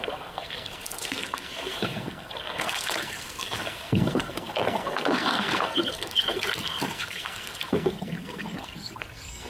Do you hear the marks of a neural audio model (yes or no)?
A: yes